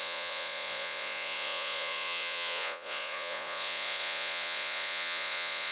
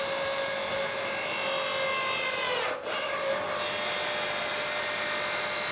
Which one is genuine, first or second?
second